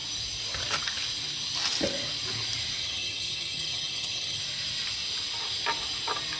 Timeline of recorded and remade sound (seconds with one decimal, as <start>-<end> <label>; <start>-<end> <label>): 0.0-2.8 recorded; 2.8-4.4 remade; 4.4-6.4 recorded